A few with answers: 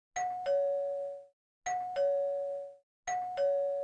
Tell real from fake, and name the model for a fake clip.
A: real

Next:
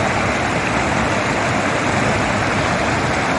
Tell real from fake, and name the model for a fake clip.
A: real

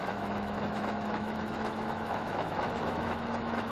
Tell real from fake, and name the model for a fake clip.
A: fake, autoencoder, DAC-VAE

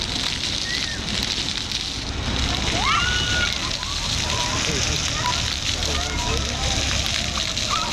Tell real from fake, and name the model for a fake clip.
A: real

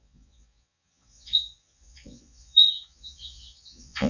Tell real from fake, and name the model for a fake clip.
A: fake, vocoder, Vocos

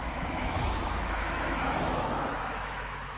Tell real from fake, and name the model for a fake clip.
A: fake, autoencoder, DAC-VAE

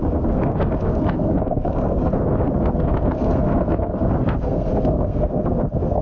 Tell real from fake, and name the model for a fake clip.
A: fake, codec, SNAC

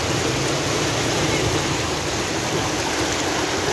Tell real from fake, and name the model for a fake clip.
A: real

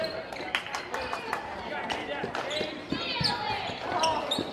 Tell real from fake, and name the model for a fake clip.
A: real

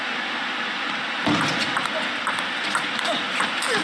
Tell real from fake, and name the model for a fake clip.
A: real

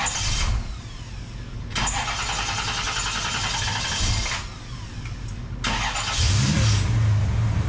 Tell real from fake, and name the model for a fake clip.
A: real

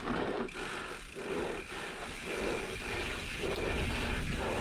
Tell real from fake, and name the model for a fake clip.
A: real